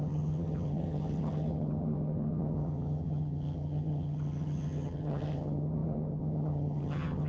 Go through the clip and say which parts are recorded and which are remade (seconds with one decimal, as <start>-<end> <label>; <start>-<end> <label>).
0.0-7.3 remade